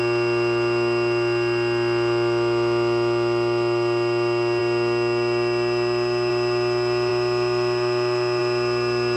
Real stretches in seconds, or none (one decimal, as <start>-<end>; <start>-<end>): 0.0-9.2